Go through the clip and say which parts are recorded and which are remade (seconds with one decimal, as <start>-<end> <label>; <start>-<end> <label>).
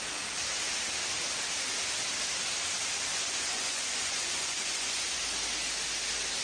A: 0.0-3.1 recorded; 3.1-5.2 remade; 5.2-6.4 recorded